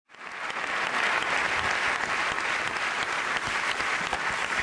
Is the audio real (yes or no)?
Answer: yes